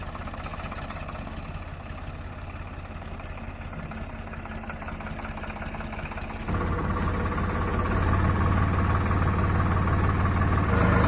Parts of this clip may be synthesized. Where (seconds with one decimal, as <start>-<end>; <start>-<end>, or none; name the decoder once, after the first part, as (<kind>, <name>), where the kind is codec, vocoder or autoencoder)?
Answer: none